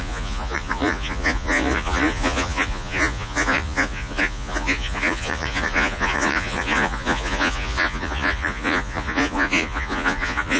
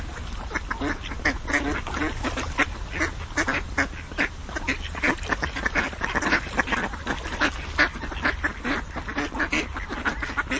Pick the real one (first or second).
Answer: second